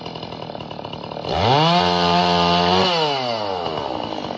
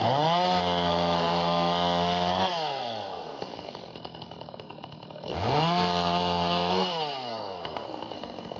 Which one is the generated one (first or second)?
second